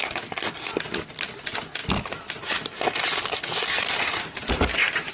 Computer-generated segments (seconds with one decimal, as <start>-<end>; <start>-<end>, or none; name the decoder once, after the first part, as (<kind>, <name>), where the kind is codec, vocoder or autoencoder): none